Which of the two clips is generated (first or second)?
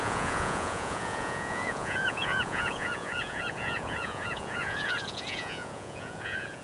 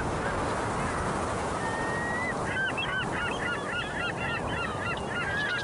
first